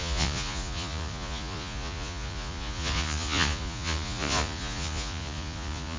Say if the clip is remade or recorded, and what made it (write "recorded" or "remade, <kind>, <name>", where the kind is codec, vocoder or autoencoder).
remade, vocoder, Vocos